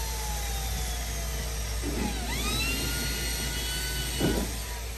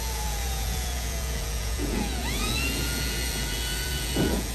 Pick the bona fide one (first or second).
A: first